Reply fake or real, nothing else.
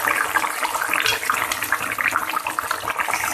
real